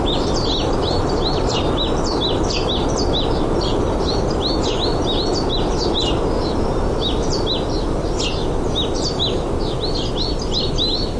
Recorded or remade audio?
recorded